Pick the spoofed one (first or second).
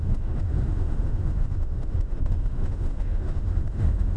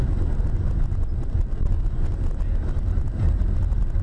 first